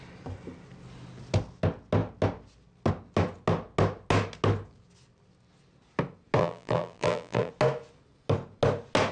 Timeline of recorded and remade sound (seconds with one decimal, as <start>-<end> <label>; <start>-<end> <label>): 0.0-6.4 recorded; 6.4-7.5 remade; 7.5-9.1 recorded